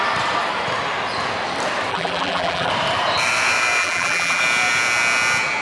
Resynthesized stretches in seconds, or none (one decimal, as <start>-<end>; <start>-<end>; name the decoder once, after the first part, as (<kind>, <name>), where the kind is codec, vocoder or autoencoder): 1.9-2.7 (vocoder, BigVGAN v2); 3.8-4.4